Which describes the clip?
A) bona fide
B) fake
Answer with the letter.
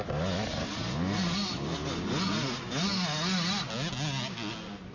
A